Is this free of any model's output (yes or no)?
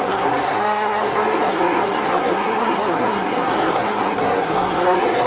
no